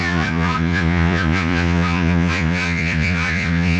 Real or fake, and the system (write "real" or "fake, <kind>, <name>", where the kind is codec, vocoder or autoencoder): fake, vocoder, Vocos